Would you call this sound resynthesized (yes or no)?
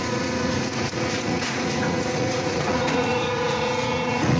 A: yes